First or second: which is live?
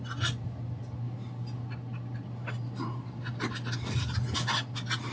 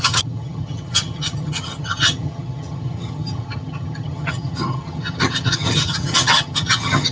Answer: first